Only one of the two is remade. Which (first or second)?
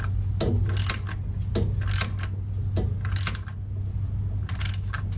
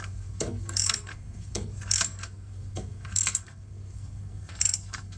second